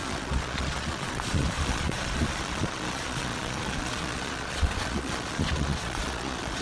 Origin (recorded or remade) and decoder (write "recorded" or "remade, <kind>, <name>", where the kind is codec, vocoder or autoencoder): remade, vocoder, Vocos